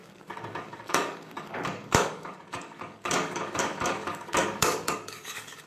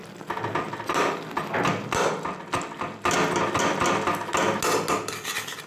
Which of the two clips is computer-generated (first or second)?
first